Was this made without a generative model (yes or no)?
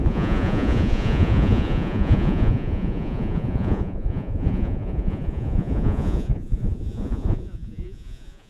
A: no